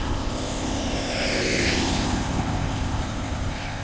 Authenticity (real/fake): fake